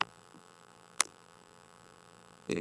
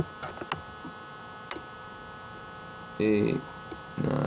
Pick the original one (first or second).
second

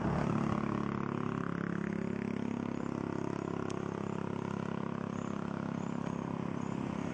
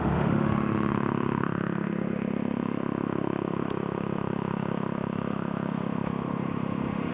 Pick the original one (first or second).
first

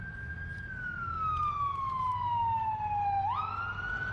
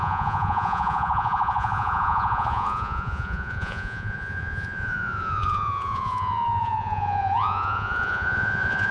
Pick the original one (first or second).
first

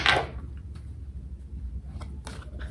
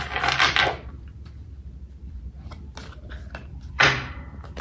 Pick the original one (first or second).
first